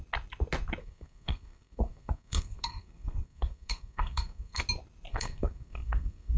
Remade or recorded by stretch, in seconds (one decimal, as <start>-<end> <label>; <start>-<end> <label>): 0.0-0.8 recorded; 0.8-4.6 remade; 4.6-5.1 recorded; 5.1-6.4 remade